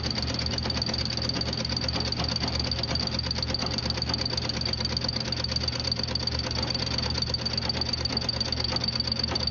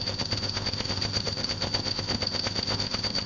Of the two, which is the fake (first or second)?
second